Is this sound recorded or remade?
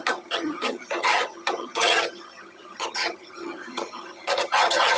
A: remade